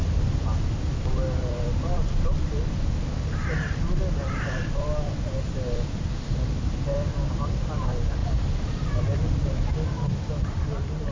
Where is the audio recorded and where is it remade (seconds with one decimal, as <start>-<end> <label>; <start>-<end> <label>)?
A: 0.0-11.1 remade